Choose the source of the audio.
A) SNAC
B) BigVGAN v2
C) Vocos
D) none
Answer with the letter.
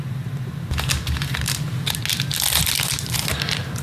D